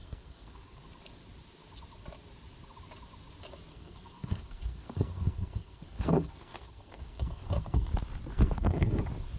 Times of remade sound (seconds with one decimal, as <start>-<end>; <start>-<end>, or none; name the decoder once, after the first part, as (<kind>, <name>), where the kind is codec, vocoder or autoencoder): 0.0-0.8 (codec, SNAC); 3.7-7.9; 8.3-9.0